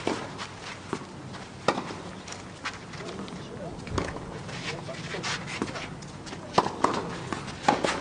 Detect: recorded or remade recorded